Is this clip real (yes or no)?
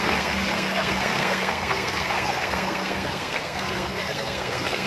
no